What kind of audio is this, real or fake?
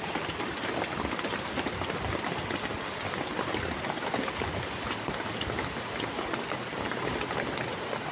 real